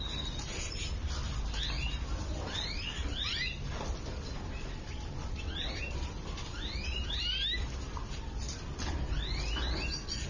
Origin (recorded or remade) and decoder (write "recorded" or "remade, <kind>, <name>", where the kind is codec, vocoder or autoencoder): recorded